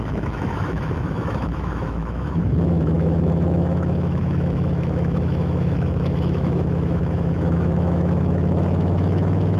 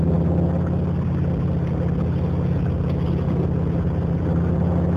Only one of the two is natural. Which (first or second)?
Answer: second